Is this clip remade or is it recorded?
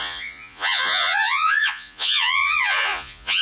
remade